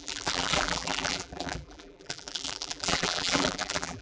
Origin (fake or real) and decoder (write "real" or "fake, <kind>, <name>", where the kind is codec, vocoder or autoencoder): fake, vocoder, BigVGAN v2